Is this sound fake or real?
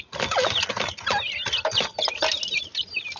real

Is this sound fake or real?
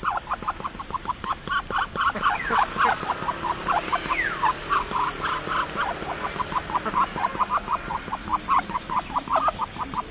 real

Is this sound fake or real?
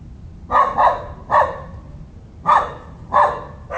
real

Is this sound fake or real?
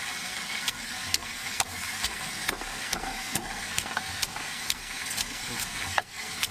fake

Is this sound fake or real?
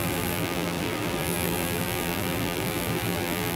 fake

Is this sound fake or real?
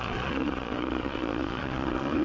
fake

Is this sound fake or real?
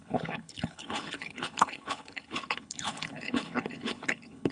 fake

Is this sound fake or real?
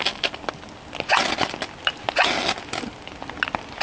real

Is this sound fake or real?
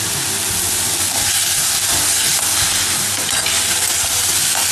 real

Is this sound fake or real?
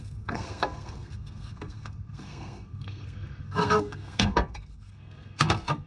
fake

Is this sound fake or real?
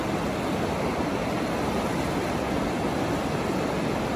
real